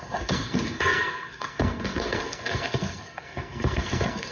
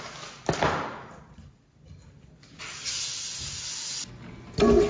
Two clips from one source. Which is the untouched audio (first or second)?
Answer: second